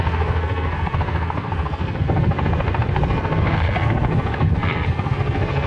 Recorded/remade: remade